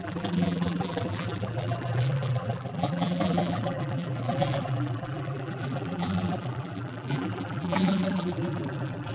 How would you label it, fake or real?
fake